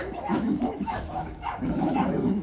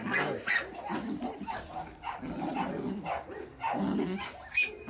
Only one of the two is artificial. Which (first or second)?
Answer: first